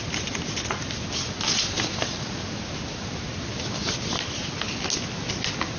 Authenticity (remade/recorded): recorded